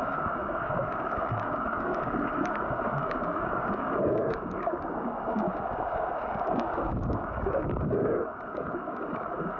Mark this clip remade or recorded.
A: remade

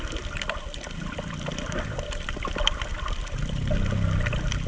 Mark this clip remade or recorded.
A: recorded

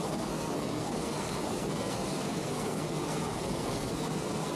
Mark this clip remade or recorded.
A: remade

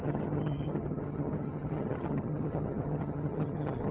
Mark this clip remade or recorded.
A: remade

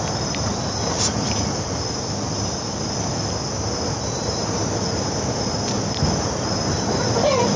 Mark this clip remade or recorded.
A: recorded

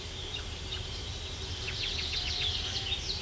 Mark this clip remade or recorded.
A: recorded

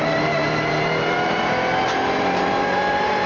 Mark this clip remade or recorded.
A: remade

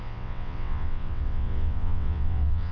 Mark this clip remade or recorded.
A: remade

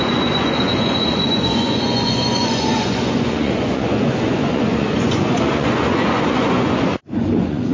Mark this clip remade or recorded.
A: remade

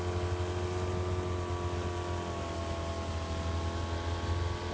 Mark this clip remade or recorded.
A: recorded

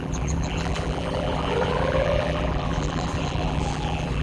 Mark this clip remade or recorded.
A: remade